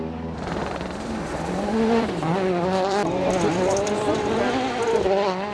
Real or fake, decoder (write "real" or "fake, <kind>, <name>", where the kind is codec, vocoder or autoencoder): fake, vocoder, BigVGAN v2